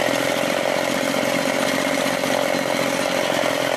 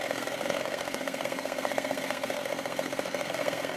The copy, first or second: second